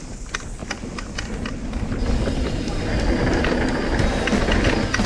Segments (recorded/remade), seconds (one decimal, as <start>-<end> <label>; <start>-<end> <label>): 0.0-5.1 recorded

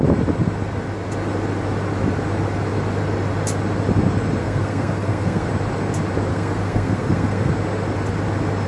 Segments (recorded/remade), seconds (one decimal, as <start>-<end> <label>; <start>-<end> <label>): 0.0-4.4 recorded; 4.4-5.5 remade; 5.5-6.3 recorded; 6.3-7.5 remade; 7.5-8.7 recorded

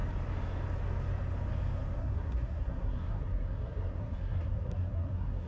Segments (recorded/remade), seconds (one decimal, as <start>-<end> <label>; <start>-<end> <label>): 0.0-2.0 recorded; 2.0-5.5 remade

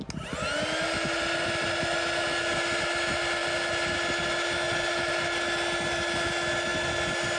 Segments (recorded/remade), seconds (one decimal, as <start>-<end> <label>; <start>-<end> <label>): 0.0-7.4 recorded

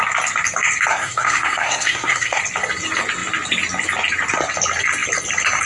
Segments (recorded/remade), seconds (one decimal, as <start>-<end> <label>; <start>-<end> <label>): 0.0-0.9 recorded; 0.9-2.4 remade; 2.4-5.6 recorded